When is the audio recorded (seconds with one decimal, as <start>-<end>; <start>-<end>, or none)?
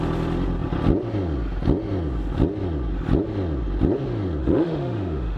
0.0-4.4